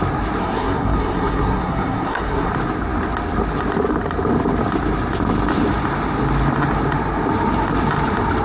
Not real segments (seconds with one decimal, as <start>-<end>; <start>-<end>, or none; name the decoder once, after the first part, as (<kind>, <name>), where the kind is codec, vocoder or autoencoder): 0.4-2.5 (codec, SNAC)